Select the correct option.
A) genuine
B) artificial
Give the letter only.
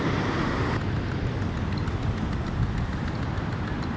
A